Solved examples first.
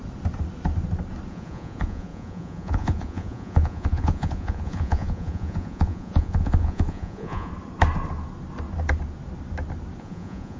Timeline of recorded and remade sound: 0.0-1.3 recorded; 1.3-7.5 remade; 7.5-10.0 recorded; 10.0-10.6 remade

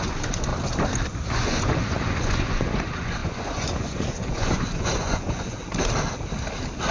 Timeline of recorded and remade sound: 0.0-0.5 remade; 0.5-1.3 recorded; 1.3-5.6 remade; 5.6-6.9 recorded

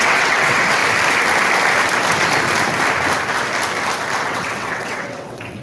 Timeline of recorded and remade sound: 0.0-0.8 remade; 0.8-4.2 recorded; 4.2-5.6 remade

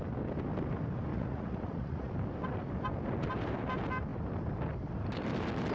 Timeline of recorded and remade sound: 0.0-1.1 recorded; 1.1-2.1 remade; 2.1-5.7 recorded